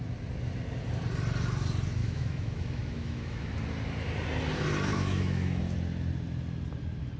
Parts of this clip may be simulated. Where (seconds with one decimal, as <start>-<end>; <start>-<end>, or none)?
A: 2.0-3.5; 4.9-5.6